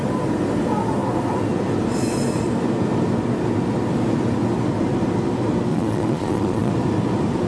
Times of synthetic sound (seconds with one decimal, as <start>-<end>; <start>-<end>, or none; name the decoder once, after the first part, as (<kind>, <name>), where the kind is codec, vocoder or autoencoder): 5.7-6.7 (vocoder, Vocos)